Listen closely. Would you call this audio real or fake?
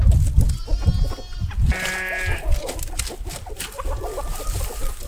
real